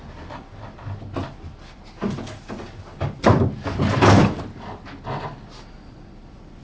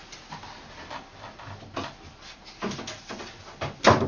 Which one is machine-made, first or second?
first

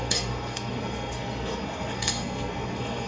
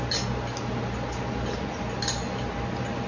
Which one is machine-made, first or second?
first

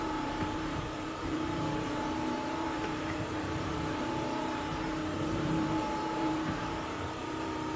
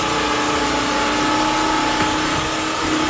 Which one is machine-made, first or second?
first